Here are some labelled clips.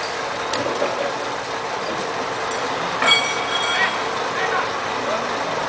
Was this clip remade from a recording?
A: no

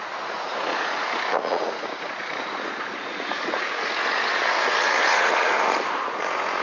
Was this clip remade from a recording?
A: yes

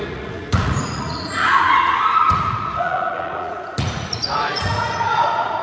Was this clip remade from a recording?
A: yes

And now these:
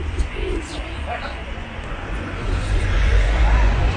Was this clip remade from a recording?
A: yes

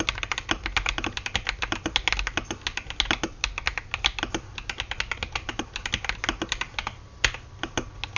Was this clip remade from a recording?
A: no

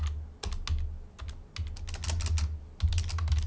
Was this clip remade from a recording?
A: no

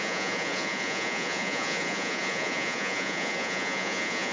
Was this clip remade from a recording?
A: yes